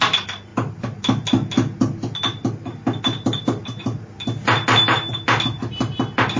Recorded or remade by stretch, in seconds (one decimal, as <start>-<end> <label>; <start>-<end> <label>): 0.0-6.4 recorded